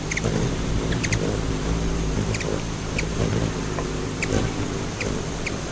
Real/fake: real